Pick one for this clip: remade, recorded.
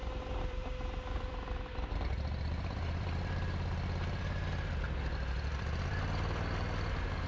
remade